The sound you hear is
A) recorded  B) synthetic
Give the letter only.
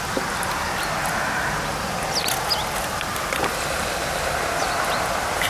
A